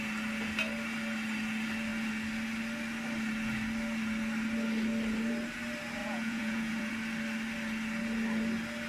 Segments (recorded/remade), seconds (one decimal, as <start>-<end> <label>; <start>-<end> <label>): 0.0-6.0 recorded; 6.0-6.9 remade; 6.9-8.9 recorded